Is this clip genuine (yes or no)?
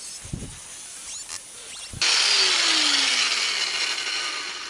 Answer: yes